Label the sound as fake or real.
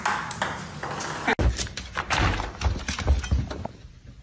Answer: real